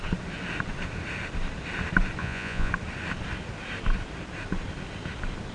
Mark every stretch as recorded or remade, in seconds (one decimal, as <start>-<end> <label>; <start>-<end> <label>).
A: 0.0-2.2 recorded; 2.2-2.7 remade; 2.7-5.5 recorded